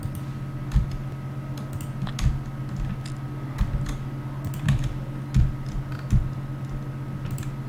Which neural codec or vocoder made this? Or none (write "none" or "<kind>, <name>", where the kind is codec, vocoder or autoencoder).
none